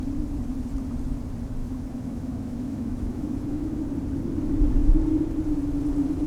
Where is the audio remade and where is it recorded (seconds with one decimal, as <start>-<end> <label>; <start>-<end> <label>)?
0.0-1.6 recorded; 1.6-3.8 remade; 3.8-6.3 recorded